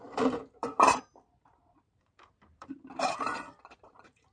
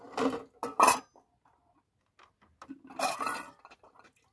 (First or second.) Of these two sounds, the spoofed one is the first